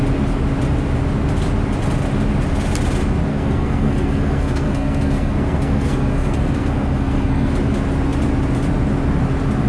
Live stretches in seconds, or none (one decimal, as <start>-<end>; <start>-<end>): 0.0-3.3; 7.5-9.7